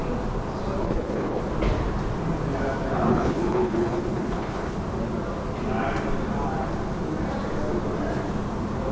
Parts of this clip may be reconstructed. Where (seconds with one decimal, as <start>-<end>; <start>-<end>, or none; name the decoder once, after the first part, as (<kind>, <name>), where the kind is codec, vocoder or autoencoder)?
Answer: 0.8-1.4 (codec, HILCodec); 3.1-4.8